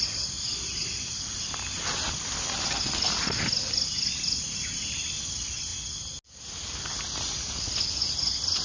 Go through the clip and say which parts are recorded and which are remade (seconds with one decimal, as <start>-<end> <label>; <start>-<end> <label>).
0.0-8.6 recorded